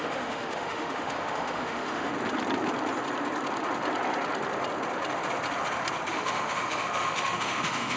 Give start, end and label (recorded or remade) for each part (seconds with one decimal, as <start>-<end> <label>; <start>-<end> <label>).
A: 0.0-2.1 remade; 2.1-6.1 recorded; 6.1-8.0 remade